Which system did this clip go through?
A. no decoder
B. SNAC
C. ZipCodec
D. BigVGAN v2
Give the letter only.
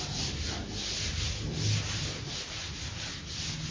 A